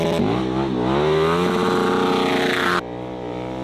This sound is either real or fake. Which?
real